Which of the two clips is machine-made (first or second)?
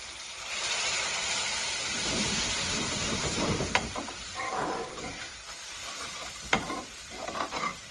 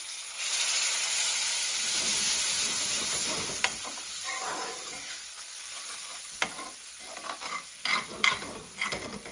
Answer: first